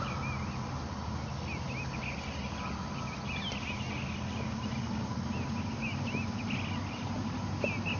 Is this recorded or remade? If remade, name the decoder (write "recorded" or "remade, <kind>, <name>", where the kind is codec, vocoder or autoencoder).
recorded